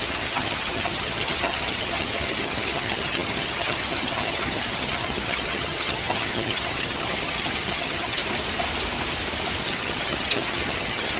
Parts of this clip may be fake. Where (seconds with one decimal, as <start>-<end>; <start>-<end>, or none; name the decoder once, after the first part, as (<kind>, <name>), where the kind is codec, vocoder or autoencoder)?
0.0-8.2 (vocoder, HiFi-GAN); 9.6-11.2